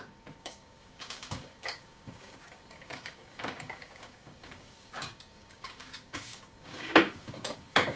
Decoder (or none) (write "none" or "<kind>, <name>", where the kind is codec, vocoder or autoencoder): codec, DAC